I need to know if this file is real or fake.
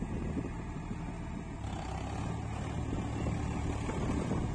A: real